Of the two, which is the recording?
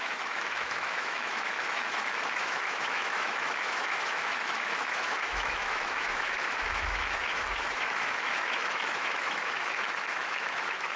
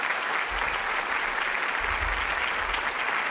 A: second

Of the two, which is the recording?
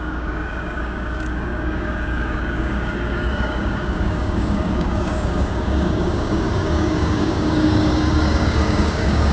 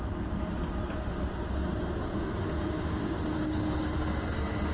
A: second